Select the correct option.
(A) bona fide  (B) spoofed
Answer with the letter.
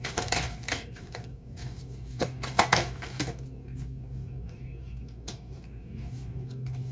B